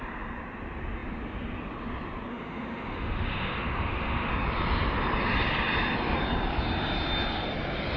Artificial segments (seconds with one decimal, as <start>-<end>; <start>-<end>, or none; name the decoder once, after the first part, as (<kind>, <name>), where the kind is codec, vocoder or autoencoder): 2.3-4.3 (autoencoder, DAC-VAE)